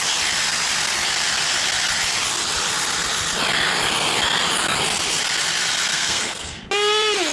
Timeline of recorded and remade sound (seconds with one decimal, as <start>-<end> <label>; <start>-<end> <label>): 0.0-5.9 recorded; 5.9-6.6 remade; 6.6-7.3 recorded